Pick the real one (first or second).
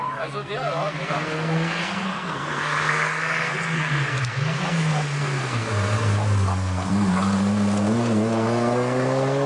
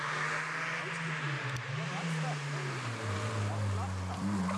second